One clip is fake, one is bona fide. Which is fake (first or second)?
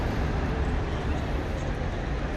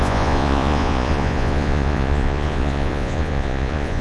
second